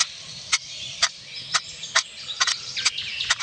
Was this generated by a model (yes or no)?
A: no